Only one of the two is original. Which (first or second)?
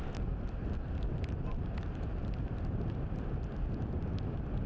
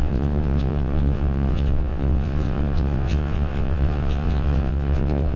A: first